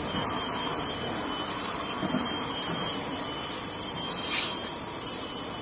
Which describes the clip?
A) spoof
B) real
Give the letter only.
B